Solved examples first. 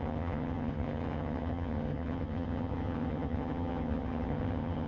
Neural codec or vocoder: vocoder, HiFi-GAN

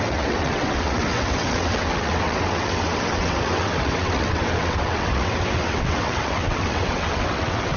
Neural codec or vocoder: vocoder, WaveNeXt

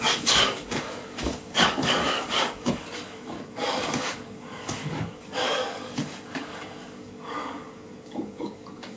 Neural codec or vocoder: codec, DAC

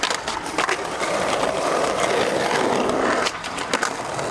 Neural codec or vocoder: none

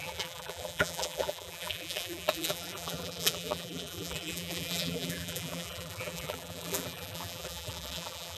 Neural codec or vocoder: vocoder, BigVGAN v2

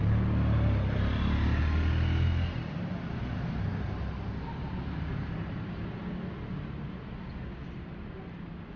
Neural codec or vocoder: none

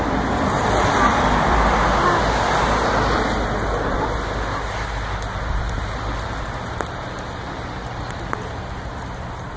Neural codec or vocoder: vocoder, BigVGAN v2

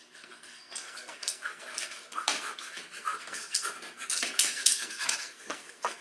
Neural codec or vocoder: codec, SNAC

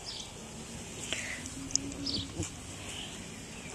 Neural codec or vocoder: none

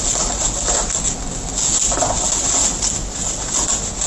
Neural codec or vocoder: none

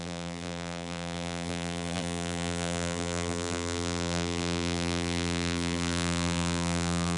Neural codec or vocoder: vocoder, BigVGAN v2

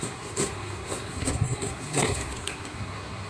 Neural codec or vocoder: codec, SNAC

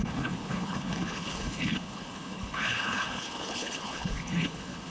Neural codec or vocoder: codec, HILCodec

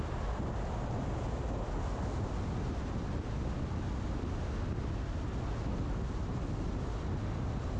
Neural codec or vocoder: none